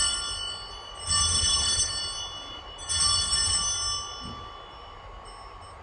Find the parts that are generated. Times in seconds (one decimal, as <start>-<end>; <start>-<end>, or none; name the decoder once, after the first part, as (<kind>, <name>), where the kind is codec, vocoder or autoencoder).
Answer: 1.3-1.9 (codec, HILCodec)